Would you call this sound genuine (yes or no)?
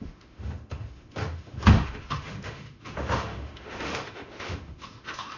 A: no